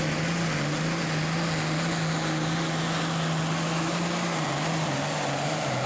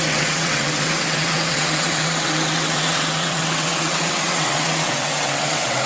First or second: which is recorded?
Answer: first